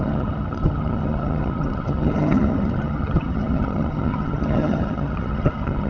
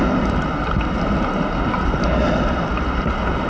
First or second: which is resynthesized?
first